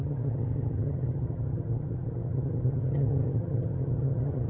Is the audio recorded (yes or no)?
no